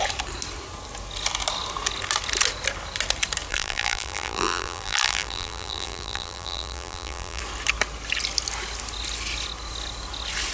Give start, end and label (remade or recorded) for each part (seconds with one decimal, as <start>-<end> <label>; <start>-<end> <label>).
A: 0.0-3.5 recorded; 3.5-7.4 remade; 7.4-10.5 recorded